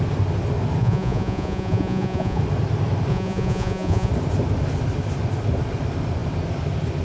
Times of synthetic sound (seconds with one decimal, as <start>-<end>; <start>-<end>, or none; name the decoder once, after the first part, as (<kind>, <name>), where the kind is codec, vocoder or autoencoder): 0.8-2.4 (vocoder, Vocos); 3.1-4.1